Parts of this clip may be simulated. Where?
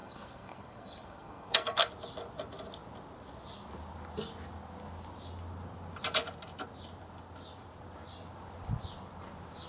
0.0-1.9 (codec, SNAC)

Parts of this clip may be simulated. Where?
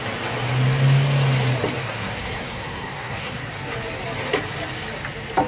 1.8-3.4 (codec, SNAC)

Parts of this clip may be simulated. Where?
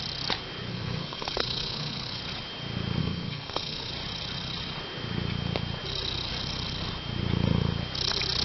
0.7-2.2 (codec, SNAC); 3.0-3.9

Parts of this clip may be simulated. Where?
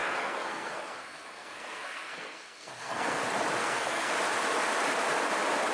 0.0-3.2 (codec, SNAC); 3.6-4.1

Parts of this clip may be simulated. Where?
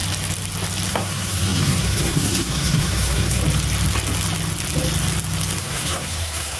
0.9-3.4 (codec, SNAC); 5.6-6.6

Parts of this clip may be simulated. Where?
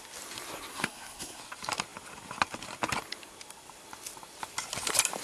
0.7-1.4 (codec, SNAC)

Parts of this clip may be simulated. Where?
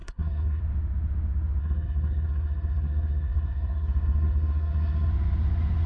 0.0-0.6 (codec, SNAC); 1.6-5.1